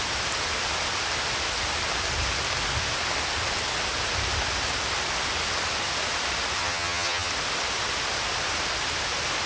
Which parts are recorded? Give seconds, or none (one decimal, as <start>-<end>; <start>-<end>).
0.0-6.6; 7.3-9.5